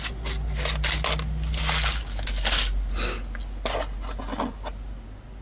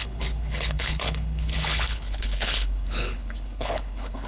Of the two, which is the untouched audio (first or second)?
first